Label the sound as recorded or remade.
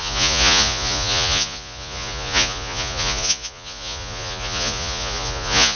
remade